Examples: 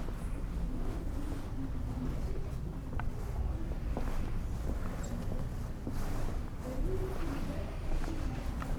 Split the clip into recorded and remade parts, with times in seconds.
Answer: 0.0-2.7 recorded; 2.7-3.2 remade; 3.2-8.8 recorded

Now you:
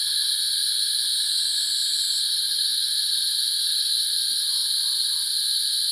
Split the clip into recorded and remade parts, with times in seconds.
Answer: 0.0-5.9 recorded

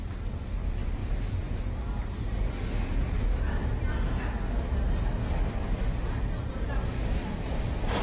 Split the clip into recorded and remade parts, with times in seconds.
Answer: 0.0-1.0 recorded; 1.0-1.7 remade; 1.7-8.0 recorded

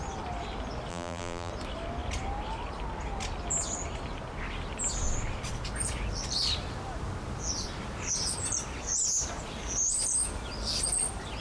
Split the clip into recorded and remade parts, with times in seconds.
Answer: 0.0-0.9 recorded; 0.9-1.5 remade; 1.5-11.4 recorded

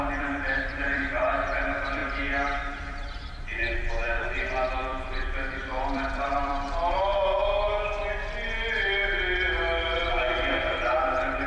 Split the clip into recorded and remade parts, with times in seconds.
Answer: 0.0-7.1 remade; 7.1-10.1 recorded; 10.1-11.5 remade

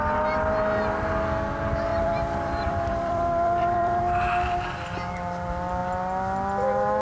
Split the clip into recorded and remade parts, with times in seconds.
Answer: 0.0-1.9 recorded; 1.9-4.0 remade; 4.0-7.0 recorded

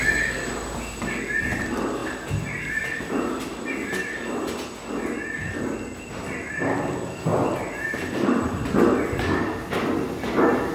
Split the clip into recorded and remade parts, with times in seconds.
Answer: 0.0-10.7 recorded